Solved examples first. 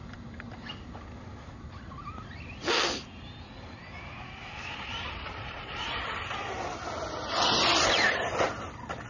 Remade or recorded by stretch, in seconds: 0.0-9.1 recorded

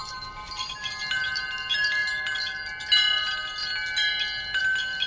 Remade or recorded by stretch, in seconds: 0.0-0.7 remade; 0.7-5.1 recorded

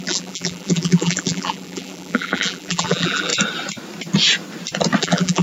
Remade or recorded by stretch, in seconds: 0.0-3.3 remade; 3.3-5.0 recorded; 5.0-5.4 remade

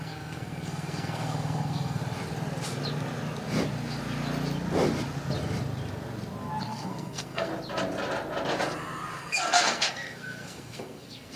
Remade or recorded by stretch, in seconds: 0.0-2.0 remade; 2.0-6.6 recorded; 6.6-7.5 remade; 7.5-9.2 recorded; 9.2-11.4 remade

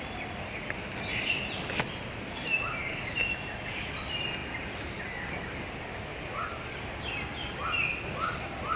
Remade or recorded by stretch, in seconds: 0.0-8.8 recorded

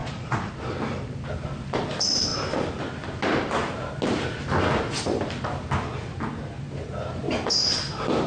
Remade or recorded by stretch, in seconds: 0.0-0.5 remade; 0.5-8.3 recorded

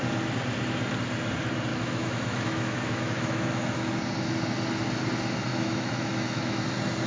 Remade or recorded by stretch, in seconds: 0.0-1.7 recorded; 1.7-4.0 remade; 4.0-5.5 recorded; 5.5-6.6 remade; 6.6-7.1 recorded

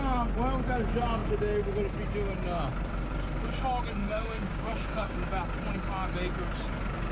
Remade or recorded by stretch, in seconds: 0.0-4.0 recorded; 4.0-5.3 remade; 5.3-7.1 recorded